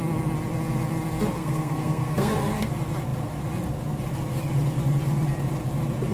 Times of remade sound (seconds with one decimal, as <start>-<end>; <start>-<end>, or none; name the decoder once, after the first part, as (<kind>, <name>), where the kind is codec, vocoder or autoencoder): 1.4-2.7 (codec, SNAC)